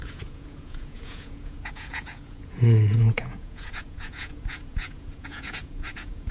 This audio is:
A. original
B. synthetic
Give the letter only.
B